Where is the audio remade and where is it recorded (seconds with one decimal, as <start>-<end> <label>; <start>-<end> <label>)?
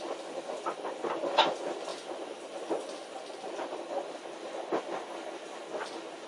0.0-6.3 recorded